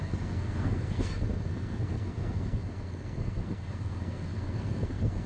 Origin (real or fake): fake